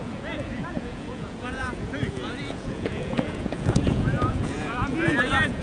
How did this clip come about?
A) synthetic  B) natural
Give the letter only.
A